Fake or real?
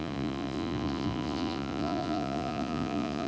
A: fake